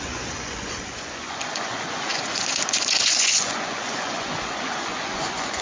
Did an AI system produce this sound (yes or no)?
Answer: yes